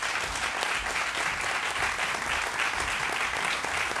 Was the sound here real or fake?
real